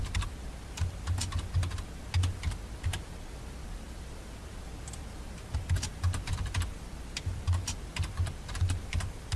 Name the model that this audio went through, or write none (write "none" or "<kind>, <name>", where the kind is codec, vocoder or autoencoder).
none